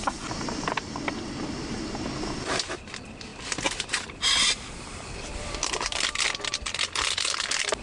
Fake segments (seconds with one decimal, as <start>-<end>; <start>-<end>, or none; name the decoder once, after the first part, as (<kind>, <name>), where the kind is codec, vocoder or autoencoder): none